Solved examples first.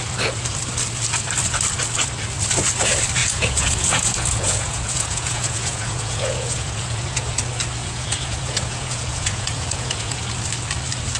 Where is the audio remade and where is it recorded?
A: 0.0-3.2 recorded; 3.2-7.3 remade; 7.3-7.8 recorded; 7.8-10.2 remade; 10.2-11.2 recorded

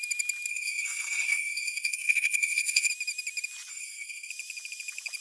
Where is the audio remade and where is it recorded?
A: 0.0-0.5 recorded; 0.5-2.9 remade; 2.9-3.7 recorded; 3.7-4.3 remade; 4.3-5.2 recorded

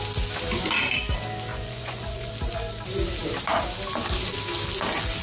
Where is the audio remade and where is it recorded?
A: 0.0-1.5 recorded; 1.5-2.3 remade; 2.3-5.2 recorded

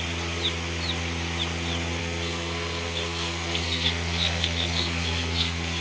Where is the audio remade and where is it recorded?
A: 0.0-2.0 recorded; 2.0-5.8 remade

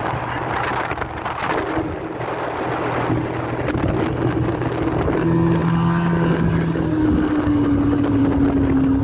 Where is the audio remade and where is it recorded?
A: 0.0-9.0 recorded

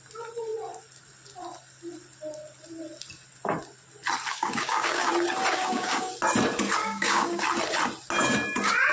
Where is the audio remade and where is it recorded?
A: 0.0-4.3 recorded; 4.3-5.1 remade; 5.1-5.5 recorded; 5.5-6.1 remade; 6.1-6.8 recorded; 6.8-7.4 remade; 7.4-8.9 recorded

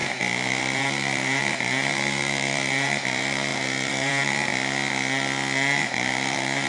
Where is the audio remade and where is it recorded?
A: 0.0-4.5 remade; 4.5-5.8 recorded; 5.8-6.7 remade

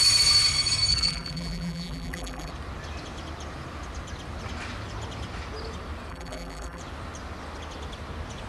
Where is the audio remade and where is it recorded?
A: 0.0-0.9 recorded; 0.9-2.5 remade; 2.5-6.1 recorded; 6.1-6.8 remade; 6.8-8.5 recorded